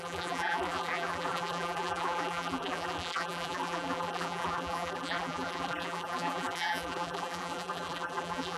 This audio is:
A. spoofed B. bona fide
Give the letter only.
A